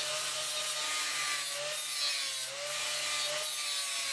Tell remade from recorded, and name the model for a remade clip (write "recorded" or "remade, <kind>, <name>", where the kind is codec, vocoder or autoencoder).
recorded